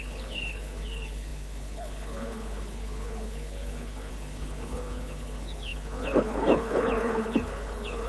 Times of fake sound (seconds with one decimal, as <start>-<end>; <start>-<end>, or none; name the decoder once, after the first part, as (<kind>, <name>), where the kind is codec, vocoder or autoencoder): 0.0-8.1 (codec, HILCodec)

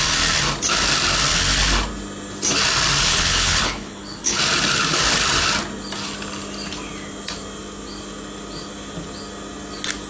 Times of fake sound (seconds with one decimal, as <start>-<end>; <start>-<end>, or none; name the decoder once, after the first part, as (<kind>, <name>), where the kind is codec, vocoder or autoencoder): 3.0-4.4 (codec, HILCodec)

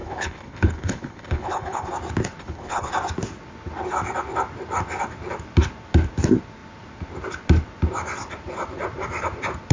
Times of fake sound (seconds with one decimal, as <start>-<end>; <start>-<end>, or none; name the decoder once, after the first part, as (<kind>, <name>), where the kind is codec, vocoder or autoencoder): 0.0-1.9 (codec, HILCodec); 2.4-2.9

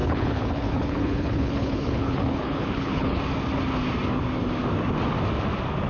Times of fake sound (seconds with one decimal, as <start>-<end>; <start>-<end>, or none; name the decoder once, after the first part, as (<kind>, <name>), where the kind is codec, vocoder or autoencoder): 0.0-3.2 (codec, HILCodec)

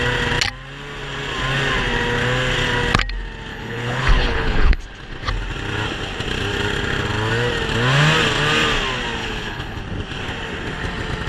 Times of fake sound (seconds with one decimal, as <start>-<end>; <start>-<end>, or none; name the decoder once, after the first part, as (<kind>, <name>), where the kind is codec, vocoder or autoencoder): 3.5-4.8 (codec, HILCodec); 9.2-9.8

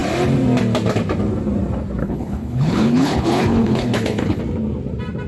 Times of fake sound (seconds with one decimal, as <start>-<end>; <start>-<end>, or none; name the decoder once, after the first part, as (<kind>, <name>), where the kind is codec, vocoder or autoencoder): 2.0-4.4 (codec, HILCodec)